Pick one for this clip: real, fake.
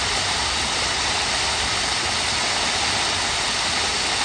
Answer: real